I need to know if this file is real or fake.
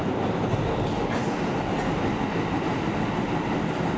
real